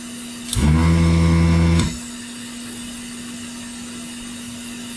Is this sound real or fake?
real